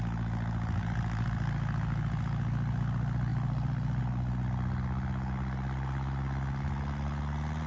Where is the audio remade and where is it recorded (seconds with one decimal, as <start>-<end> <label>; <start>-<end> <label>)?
0.0-3.3 recorded; 3.3-4.0 remade; 4.0-7.7 recorded